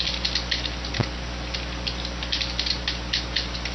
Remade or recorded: recorded